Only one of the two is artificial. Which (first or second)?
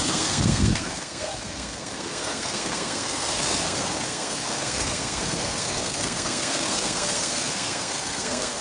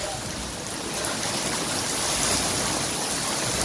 first